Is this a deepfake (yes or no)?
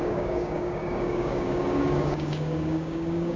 yes